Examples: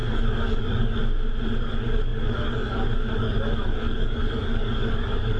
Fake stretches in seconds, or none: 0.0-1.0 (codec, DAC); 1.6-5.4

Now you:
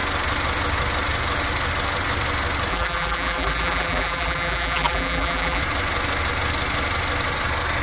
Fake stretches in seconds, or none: 2.7-5.6 (vocoder, BigVGAN v2)

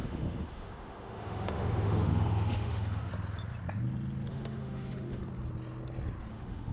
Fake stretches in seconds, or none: 0.0-3.1 (autoencoder, DAC-VAE); 4.3-5.2; 6.3-6.7

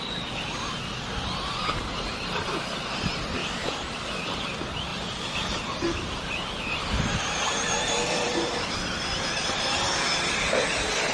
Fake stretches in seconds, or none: 3.4-4.3 (vocoder, BigVGAN v2); 4.9-9.7

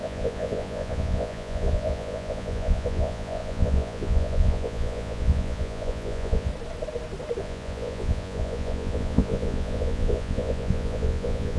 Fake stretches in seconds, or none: 0.0-6.5 (vocoder, Vocos); 7.4-11.6

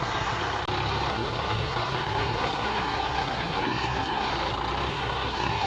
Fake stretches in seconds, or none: 0.0-0.4 (codec, SNAC); 1.1-4.3; 4.9-5.7